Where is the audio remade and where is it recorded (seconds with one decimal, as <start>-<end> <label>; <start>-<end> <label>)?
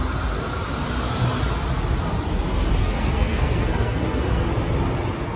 0.0-2.8 recorded; 2.8-4.5 remade; 4.5-5.4 recorded